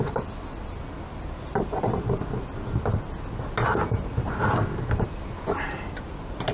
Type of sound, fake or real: real